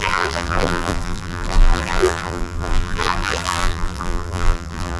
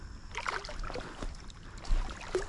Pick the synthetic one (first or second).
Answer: first